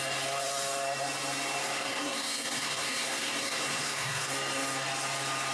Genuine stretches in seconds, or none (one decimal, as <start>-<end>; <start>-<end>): 0.0-1.6; 4.3-5.5